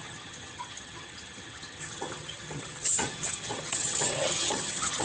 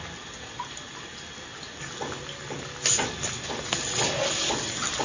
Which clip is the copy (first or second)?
first